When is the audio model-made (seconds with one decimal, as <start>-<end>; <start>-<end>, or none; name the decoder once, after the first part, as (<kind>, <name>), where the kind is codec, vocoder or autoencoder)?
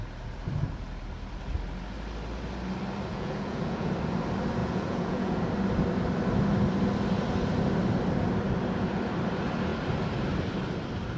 3.1-3.9 (vocoder, Vocos); 4.6-5.4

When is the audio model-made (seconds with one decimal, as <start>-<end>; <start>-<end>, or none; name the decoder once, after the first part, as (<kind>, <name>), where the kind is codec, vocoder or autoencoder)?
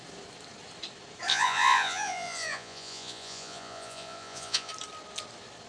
1.3-4.7 (vocoder, Vocos)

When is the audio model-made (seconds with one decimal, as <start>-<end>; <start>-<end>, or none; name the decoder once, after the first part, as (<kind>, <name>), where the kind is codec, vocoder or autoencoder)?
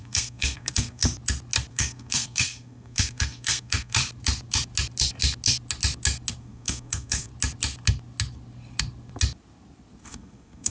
0.0-1.0 (codec, SNAC); 1.7-4.0; 6.4-7.3; 10.0-10.7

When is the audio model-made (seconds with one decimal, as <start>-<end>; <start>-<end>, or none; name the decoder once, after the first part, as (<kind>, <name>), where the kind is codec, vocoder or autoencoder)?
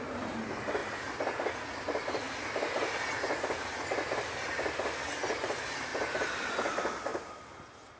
none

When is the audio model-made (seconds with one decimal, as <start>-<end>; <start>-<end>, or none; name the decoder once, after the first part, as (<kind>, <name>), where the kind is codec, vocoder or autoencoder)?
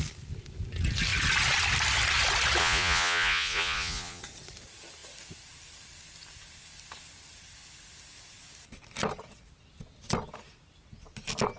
2.6-4.2 (vocoder, Vocos)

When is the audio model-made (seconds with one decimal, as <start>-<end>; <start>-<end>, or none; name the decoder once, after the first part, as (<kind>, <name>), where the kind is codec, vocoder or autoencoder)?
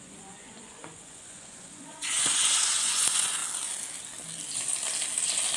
0.0-3.4 (vocoder, Vocos)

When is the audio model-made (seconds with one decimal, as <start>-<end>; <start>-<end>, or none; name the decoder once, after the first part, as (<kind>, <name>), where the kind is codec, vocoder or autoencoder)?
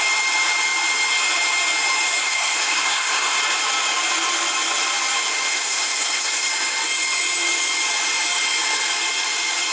2.2-3.4 (codec, SNAC); 5.5-6.5